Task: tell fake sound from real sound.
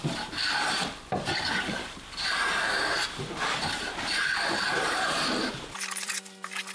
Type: fake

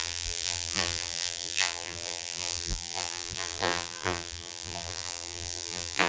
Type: fake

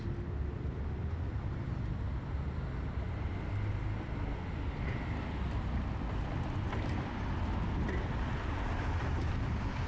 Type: real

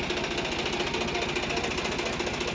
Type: real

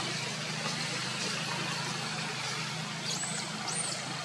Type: real